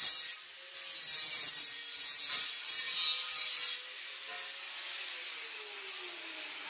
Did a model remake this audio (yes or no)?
no